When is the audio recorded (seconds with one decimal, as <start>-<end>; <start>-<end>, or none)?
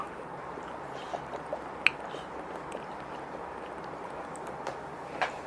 1.5-4.2